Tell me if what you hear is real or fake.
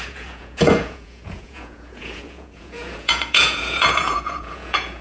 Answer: fake